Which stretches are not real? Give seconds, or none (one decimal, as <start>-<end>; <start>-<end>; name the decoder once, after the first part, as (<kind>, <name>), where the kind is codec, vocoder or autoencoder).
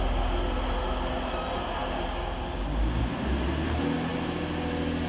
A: none